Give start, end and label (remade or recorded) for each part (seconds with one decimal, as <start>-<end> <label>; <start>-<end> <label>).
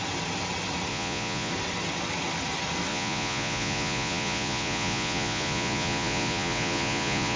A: 0.0-0.9 recorded; 0.9-1.5 remade; 1.5-2.9 recorded; 2.9-7.4 remade